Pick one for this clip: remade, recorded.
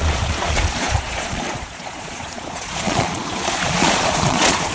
remade